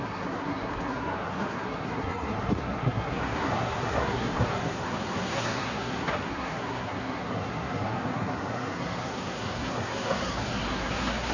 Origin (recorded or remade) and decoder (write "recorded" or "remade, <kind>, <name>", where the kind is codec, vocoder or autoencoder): remade, codec, SNAC